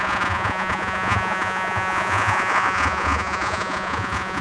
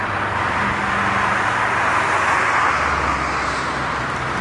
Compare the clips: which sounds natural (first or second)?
second